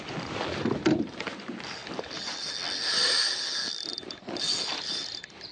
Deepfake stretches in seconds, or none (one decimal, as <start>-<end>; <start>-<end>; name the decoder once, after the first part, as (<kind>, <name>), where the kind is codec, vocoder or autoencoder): 0.0-5.5 (vocoder, BigVGAN v2)